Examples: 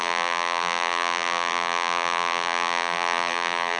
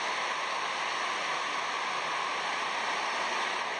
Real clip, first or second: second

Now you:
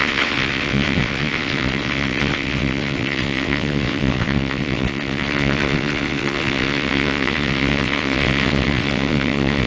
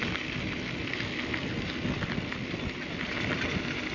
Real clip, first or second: second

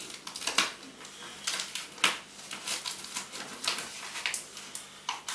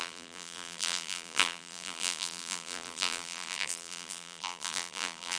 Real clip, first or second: first